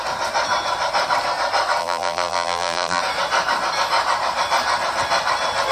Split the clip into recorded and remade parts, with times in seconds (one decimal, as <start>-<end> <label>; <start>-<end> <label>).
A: 0.0-1.8 recorded; 1.8-3.0 remade; 3.0-5.7 recorded